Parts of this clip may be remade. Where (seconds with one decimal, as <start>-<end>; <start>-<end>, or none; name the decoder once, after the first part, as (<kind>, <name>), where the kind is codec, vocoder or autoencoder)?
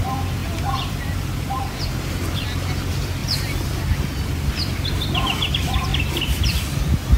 0.0-7.2 (vocoder, BigVGAN v2)